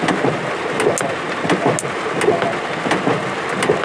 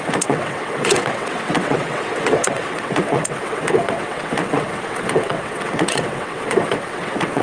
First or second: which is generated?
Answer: second